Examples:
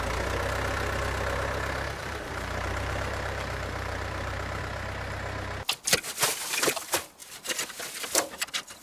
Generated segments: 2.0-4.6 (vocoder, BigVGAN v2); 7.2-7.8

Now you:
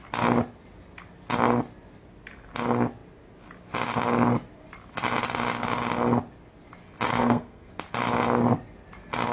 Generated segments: 7.1-7.7 (codec, SNAC)

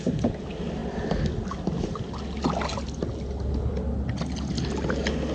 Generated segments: none

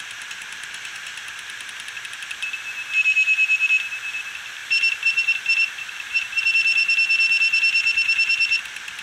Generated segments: 4.6-8.6 (vocoder, BigVGAN v2)

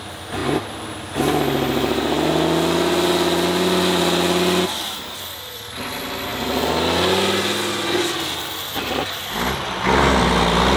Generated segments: none

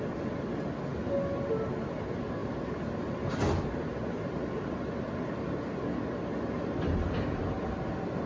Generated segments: none

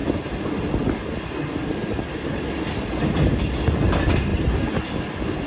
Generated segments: none